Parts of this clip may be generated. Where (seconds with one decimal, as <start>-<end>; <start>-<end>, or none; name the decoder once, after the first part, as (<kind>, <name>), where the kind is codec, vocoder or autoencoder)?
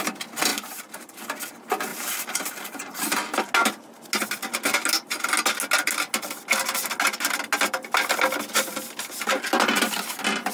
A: 0.5-1.2 (vocoder, BigVGAN v2); 1.9-3.5